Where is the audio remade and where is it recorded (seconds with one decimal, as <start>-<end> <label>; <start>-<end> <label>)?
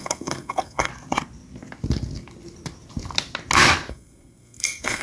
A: 0.0-0.9 remade; 0.9-3.9 recorded; 3.9-5.0 remade